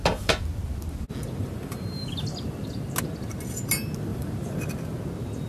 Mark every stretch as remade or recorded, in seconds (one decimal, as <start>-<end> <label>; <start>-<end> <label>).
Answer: 0.0-1.4 recorded; 1.4-2.0 remade; 2.0-4.1 recorded; 4.1-4.7 remade; 4.7-5.5 recorded